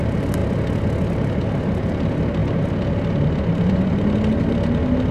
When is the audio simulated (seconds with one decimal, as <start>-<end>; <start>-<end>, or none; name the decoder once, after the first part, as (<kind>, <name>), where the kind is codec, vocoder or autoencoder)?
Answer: none